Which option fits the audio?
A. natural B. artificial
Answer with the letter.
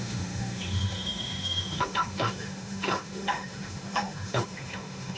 B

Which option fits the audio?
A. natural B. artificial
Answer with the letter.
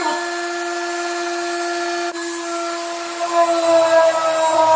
A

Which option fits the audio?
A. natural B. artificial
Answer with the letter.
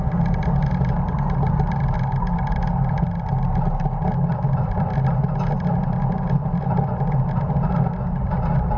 A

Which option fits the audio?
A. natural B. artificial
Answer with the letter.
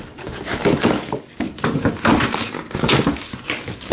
B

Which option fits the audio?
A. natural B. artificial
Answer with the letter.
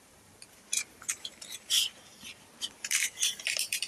B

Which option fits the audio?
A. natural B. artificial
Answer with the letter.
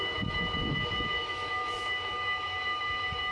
B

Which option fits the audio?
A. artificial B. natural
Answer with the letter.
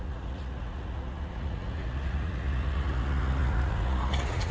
A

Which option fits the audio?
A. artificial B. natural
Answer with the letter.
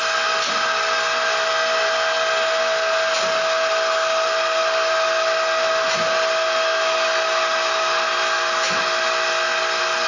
B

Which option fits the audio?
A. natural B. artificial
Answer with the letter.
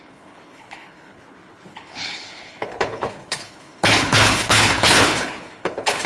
B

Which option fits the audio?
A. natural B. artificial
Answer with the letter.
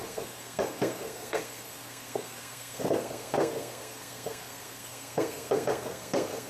B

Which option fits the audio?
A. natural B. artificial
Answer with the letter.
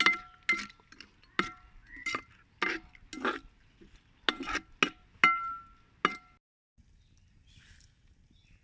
A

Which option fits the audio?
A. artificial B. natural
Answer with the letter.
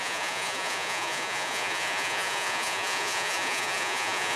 A